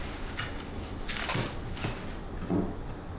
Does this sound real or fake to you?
real